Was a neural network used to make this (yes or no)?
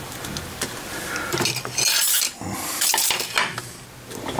no